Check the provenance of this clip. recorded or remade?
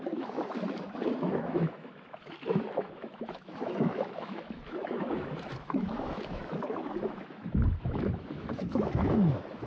remade